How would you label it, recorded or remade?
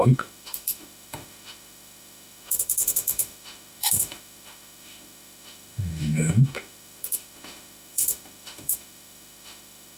remade